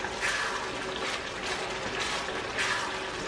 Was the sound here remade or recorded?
recorded